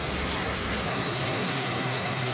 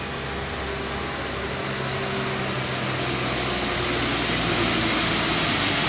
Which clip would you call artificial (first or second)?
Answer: first